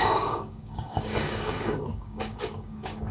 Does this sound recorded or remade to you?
remade